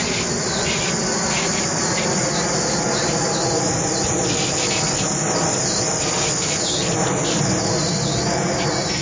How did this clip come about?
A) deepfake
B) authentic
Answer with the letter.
B